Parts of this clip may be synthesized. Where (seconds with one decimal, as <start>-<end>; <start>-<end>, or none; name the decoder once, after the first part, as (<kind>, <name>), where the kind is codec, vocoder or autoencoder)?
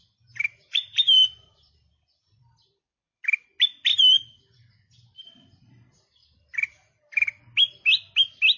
0.8-3.2 (vocoder, BigVGAN v2); 3.9-4.7; 6.2-7.0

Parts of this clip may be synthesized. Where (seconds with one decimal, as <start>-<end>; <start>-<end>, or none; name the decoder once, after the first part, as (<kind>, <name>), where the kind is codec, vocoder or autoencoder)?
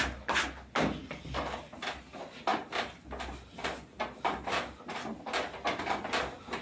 2.5-5.9 (vocoder, BigVGAN v2)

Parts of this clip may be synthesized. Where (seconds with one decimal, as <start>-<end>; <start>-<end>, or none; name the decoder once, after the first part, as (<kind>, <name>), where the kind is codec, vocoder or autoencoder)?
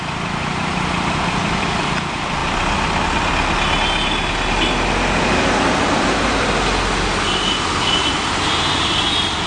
none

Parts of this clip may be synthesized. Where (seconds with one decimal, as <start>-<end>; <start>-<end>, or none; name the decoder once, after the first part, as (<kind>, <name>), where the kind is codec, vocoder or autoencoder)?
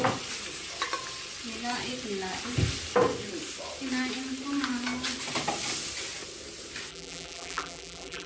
6.9-8.3 (vocoder, BigVGAN v2)